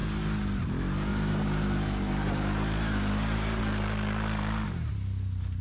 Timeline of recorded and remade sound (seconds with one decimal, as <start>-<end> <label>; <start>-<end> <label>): 0.0-1.1 recorded; 1.1-3.6 remade; 3.6-5.6 recorded